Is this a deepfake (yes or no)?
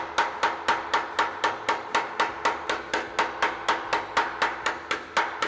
no